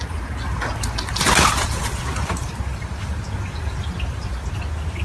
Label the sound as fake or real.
real